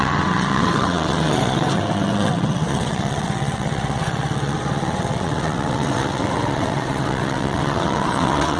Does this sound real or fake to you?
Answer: fake